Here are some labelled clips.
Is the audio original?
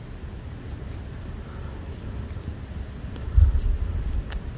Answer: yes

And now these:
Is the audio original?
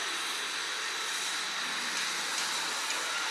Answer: yes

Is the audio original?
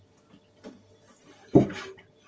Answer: yes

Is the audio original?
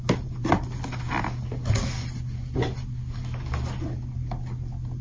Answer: yes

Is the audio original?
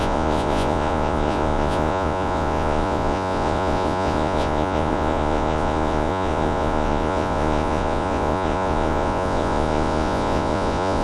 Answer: no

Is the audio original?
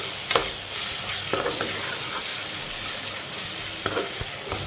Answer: yes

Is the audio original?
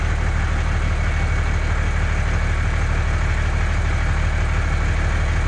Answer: yes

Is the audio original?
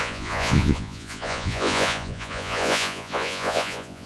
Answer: no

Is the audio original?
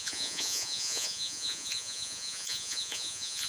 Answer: no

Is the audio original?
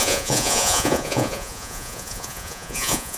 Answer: no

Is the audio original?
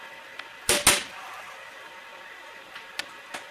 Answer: yes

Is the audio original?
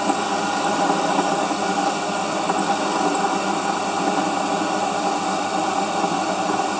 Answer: yes